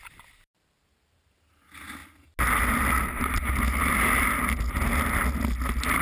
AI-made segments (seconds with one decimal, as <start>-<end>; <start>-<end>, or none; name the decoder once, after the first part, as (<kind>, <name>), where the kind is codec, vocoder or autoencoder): none